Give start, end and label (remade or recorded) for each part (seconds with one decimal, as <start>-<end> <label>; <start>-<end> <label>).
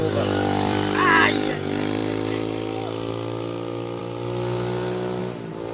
0.0-1.2 remade; 1.2-2.0 recorded; 2.0-3.1 remade; 3.1-4.0 recorded; 4.0-5.2 remade; 5.2-5.7 recorded